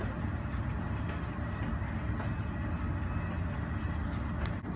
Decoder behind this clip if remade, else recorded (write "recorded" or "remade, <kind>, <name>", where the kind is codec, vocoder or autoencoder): recorded